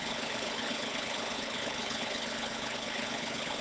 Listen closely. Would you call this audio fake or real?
fake